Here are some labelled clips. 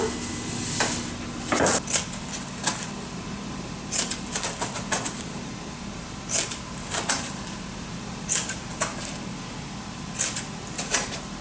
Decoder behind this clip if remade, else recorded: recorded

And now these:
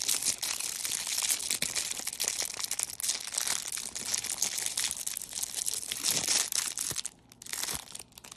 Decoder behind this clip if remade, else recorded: recorded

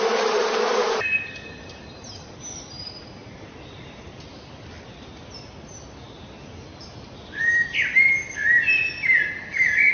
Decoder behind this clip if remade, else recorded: recorded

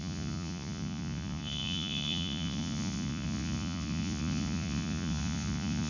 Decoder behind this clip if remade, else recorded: remade, vocoder, Vocos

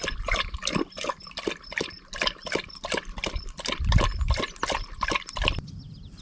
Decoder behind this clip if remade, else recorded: recorded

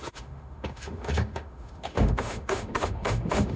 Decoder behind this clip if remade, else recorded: remade, autoencoder, DAC-VAE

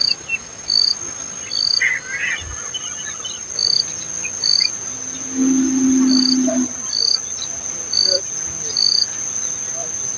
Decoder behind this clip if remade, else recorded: recorded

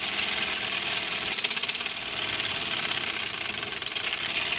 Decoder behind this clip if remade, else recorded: remade, vocoder, BigVGAN v2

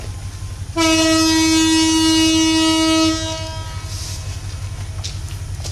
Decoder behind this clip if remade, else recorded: recorded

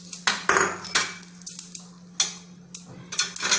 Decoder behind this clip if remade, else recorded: recorded